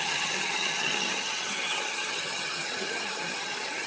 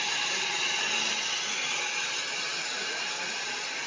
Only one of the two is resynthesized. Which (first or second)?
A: first